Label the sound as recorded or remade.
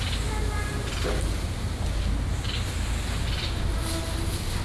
recorded